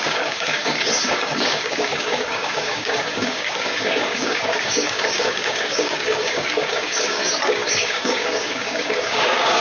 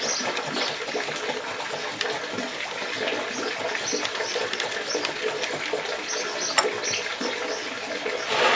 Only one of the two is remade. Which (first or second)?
first